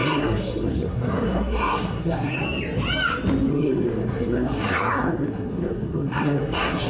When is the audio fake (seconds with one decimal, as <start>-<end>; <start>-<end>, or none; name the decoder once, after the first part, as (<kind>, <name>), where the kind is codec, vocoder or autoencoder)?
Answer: 0.0-2.4 (codec, SNAC); 3.5-6.9